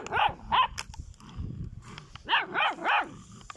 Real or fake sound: real